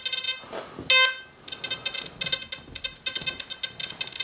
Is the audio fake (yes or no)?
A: no